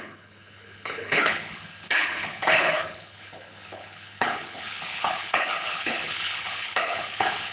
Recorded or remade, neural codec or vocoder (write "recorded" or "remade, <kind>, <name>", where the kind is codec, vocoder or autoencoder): remade, codec, HILCodec